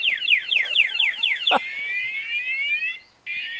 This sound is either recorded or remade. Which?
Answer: remade